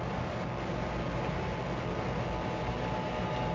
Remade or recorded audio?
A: recorded